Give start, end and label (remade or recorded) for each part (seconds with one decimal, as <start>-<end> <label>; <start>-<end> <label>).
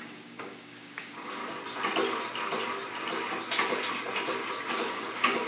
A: 0.0-1.4 remade; 1.4-4.7 recorded; 4.7-5.5 remade